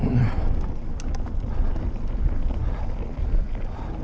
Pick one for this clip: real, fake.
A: real